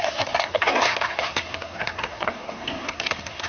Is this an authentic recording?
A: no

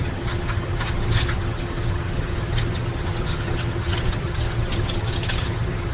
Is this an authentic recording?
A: no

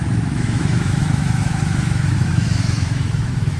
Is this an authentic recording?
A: no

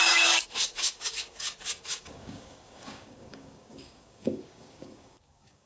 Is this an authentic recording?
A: no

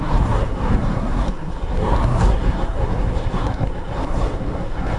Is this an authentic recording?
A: no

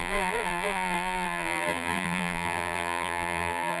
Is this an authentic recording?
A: no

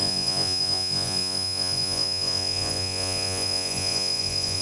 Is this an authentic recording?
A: no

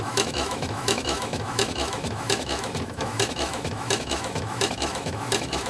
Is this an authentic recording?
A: no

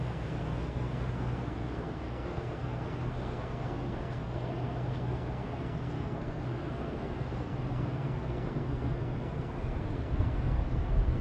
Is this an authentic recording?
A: no